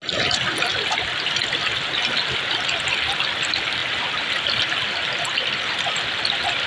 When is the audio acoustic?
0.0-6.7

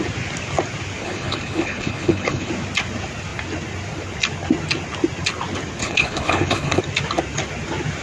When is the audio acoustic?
0.0-1.0; 2.5-5.8; 6.8-8.0

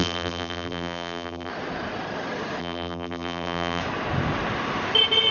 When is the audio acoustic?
1.5-2.6; 3.8-5.3

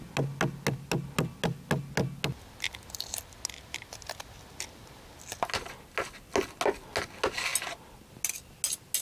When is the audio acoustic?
0.0-9.0

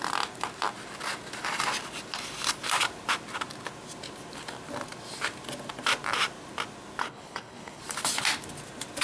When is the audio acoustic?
0.0-7.0; 7.8-9.0